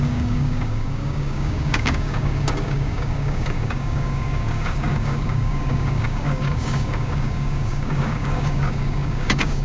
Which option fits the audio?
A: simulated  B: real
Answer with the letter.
A